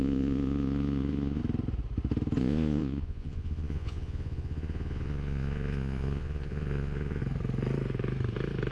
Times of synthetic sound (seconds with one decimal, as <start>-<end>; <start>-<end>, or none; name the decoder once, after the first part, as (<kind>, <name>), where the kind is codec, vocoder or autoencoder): 0.0-1.4 (vocoder, Vocos); 2.4-7.2